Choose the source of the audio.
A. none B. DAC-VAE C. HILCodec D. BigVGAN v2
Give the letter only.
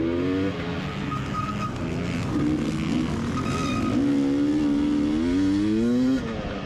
A